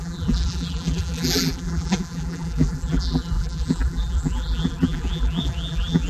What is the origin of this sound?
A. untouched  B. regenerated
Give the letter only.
B